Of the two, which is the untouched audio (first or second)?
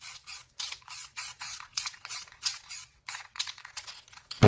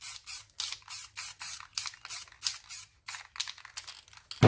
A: second